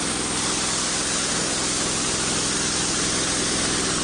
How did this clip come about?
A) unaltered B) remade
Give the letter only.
A